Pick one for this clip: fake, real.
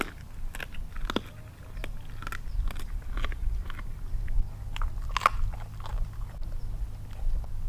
real